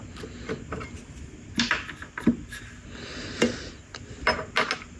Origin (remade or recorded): recorded